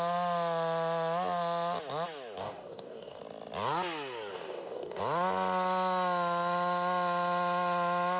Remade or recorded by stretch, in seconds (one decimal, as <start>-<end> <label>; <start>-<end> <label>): 0.0-2.4 recorded; 2.4-3.2 remade; 3.2-4.3 recorded; 4.3-5.0 remade; 5.0-8.2 recorded